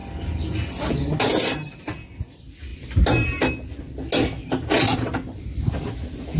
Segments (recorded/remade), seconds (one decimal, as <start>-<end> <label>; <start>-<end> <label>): 0.0-4.9 recorded; 4.9-5.6 remade; 5.6-6.4 recorded